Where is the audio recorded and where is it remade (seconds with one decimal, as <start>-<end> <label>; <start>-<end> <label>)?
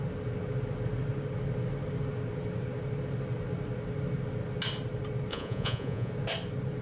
0.0-5.3 recorded; 5.3-6.1 remade; 6.1-6.8 recorded